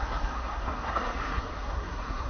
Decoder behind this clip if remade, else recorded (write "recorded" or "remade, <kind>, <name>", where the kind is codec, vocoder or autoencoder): remade, codec, SNAC